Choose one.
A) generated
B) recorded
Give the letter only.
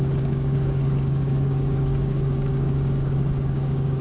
A